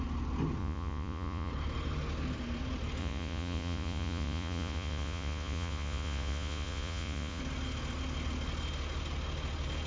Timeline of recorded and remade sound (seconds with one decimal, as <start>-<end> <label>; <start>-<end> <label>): 0.0-0.6 recorded; 0.6-1.5 remade; 1.5-3.0 recorded; 3.0-7.4 remade; 7.4-9.9 recorded